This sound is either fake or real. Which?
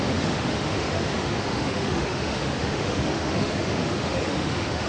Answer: fake